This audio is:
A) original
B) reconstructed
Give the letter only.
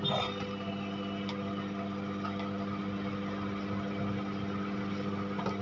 A